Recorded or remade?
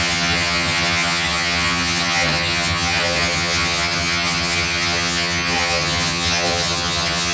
remade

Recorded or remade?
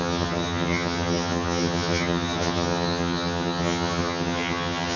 remade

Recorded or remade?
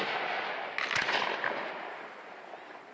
recorded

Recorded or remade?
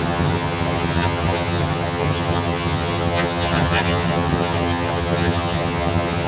remade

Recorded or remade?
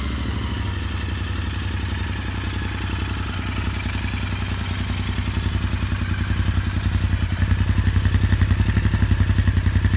recorded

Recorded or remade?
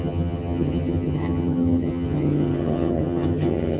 remade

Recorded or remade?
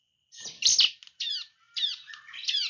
recorded